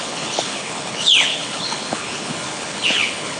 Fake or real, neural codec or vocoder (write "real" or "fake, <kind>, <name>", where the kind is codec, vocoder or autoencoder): fake, codec, HILCodec